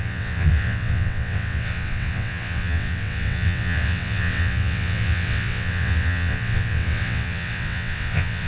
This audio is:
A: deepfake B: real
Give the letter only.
A